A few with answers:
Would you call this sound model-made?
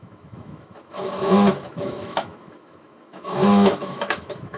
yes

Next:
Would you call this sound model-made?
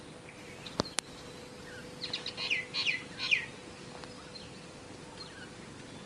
no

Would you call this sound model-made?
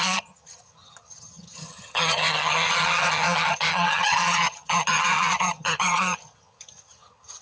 yes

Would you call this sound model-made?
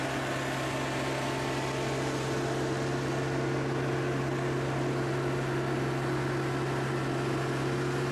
no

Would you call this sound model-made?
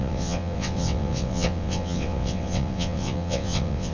yes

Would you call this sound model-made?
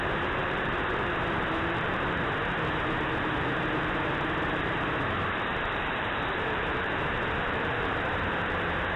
yes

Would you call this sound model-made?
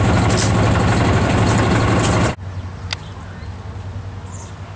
no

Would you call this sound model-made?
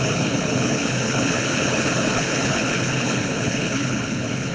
yes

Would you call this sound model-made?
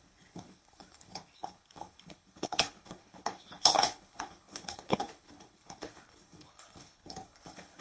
yes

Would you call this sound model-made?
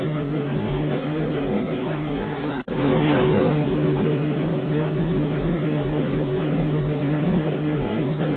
yes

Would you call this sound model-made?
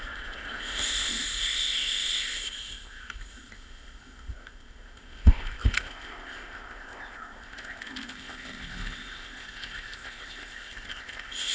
yes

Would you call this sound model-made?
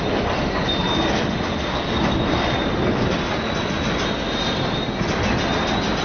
no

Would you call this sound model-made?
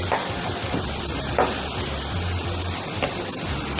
no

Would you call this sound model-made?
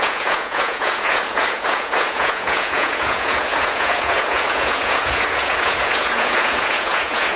yes